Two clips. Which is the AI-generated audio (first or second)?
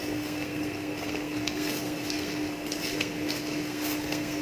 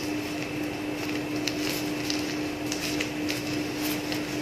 first